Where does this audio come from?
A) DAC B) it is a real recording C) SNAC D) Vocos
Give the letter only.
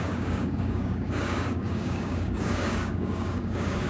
A